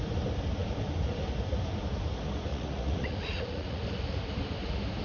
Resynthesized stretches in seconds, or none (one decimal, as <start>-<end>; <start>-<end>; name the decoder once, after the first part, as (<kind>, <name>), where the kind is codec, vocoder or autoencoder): 2.5-3.8 (vocoder, Vocos)